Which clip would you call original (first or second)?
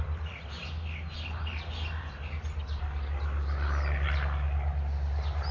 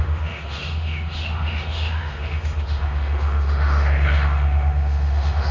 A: first